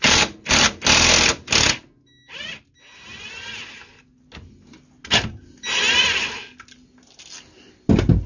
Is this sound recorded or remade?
recorded